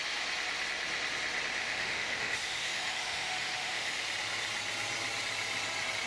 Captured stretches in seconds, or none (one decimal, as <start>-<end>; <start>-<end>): 0.0-1.6; 4.0-6.1